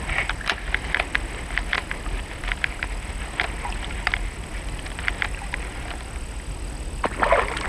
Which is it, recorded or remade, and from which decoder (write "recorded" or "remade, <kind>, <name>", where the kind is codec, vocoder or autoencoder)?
recorded